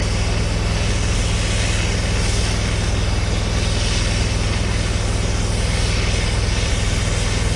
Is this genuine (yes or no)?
yes